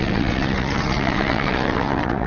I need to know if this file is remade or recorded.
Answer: remade